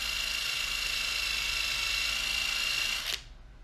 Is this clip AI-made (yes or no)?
no